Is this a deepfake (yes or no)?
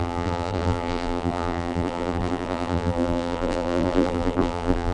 yes